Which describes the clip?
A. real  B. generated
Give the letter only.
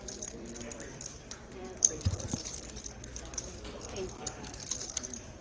B